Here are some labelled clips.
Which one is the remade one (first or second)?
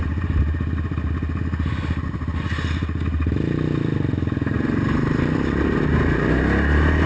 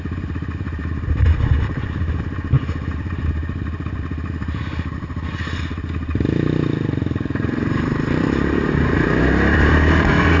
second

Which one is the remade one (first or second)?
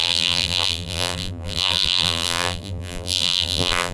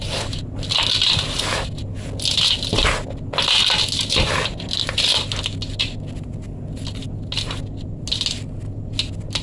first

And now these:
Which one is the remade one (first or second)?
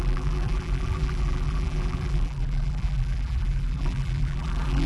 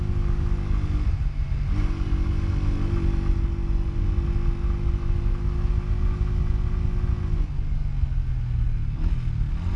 first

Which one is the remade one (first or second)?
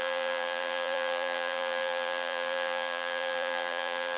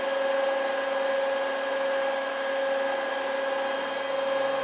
first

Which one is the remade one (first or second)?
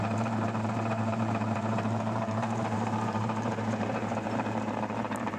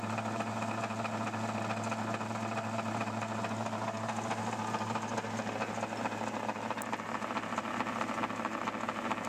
first